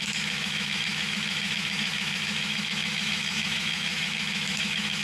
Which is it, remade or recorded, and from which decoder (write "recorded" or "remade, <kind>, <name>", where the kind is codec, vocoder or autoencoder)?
remade, autoencoder, DAC-VAE